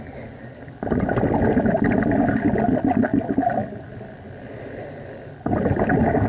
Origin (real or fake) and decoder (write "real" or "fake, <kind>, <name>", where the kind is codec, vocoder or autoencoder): real